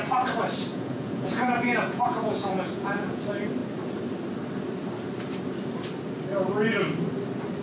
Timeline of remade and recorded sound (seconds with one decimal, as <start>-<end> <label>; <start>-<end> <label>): 0.0-0.7 recorded; 0.7-3.2 remade; 3.2-7.6 recorded